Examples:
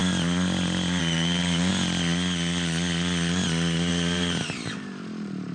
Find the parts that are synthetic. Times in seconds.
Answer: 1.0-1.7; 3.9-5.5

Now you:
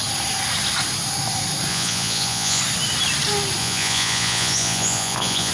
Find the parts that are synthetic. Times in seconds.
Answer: 1.7-2.6; 3.6-5.5